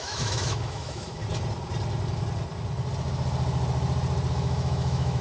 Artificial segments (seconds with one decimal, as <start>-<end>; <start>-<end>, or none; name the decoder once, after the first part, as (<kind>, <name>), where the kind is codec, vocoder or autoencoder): 0.0-1.2 (autoencoder, DAC-VAE); 4.3-5.2